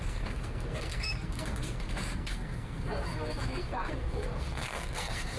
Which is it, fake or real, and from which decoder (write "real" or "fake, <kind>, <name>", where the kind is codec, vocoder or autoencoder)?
fake, codec, SNAC